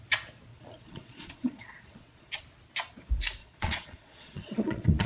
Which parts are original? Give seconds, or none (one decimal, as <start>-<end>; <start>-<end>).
0.0-0.5; 2.4-3.4